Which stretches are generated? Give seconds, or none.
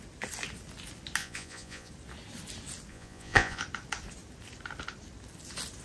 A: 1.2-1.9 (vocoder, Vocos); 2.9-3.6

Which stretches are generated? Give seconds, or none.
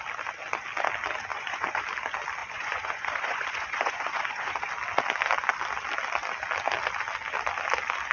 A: 1.3-1.8 (vocoder, Vocos); 2.4-4.6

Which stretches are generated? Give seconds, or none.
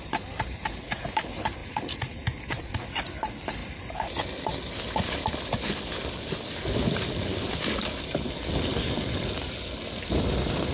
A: 1.6-2.7 (vocoder, Vocos)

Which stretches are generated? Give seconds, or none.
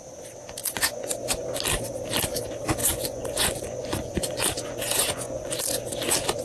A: 0.6-1.1 (vocoder, Vocos); 2.8-5.6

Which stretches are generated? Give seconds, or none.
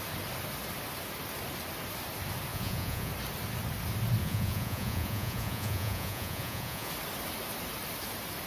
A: 2.5-3.1 (vocoder, Vocos); 4.2-6.9